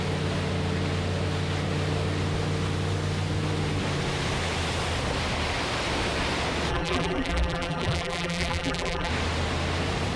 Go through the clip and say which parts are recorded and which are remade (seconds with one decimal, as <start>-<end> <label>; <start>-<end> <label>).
0.0-6.7 recorded; 6.7-9.1 remade; 9.1-10.2 recorded